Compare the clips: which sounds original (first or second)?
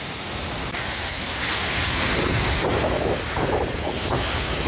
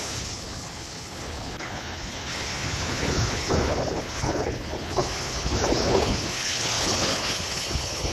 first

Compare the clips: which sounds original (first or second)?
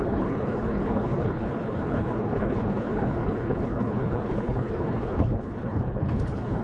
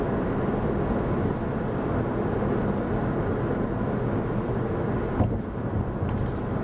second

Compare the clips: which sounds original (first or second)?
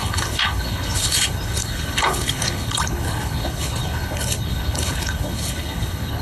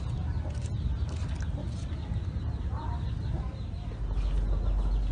second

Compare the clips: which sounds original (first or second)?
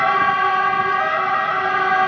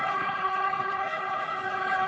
first